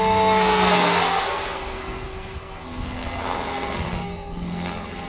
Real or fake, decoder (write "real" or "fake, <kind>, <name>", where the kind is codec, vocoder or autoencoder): fake, codec, SNAC